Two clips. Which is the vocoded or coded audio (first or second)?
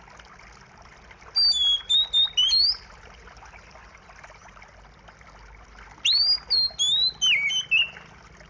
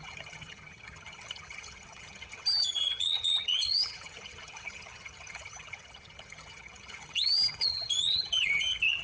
second